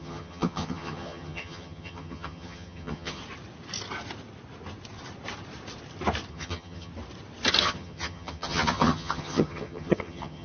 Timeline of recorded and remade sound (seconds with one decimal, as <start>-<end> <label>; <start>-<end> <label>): 0.0-3.2 remade; 3.2-6.3 recorded; 6.3-6.9 remade; 6.9-7.6 recorded; 7.6-10.4 remade